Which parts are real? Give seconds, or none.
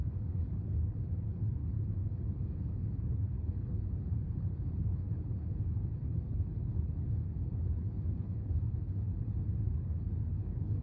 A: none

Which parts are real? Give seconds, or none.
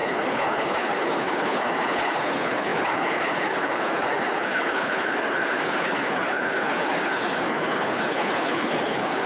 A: none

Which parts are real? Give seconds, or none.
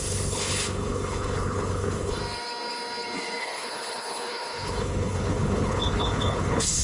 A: 2.2-3.4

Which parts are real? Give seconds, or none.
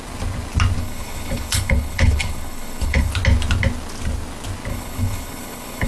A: 0.0-0.8; 3.1-4.7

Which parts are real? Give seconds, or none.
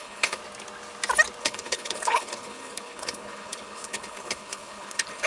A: 0.4-1.4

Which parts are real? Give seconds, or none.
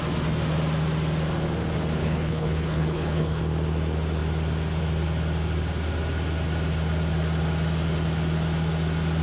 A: 0.0-2.0; 3.4-9.2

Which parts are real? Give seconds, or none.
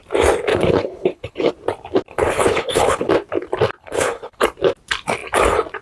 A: 0.0-0.5; 1.5-2.1; 3.1-3.8; 4.4-5.8